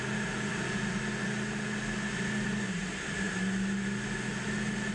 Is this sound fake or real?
real